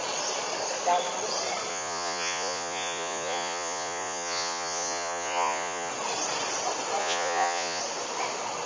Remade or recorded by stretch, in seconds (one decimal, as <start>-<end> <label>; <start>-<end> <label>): 0.0-1.7 recorded; 1.7-5.9 remade; 5.9-7.0 recorded; 7.0-7.8 remade; 7.8-8.7 recorded